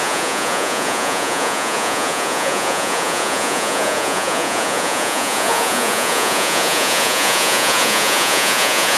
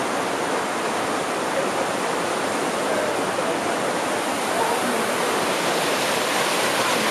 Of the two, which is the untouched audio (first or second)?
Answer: second